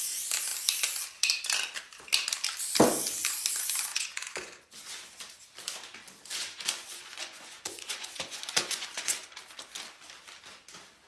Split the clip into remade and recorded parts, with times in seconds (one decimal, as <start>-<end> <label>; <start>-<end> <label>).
0.0-3.9 recorded; 3.9-4.9 remade; 4.9-6.3 recorded; 6.3-9.3 remade; 9.3-11.1 recorded